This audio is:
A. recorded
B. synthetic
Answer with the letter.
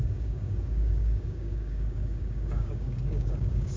B